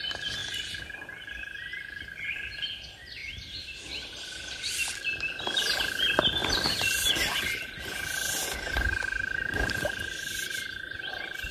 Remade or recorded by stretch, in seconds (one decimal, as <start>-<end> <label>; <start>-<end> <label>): 0.0-11.5 remade